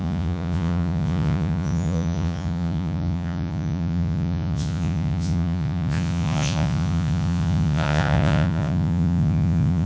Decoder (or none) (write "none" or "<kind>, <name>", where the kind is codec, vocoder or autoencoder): vocoder, Vocos